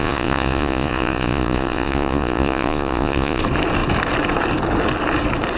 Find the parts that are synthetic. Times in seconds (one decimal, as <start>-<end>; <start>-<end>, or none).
0.0-3.4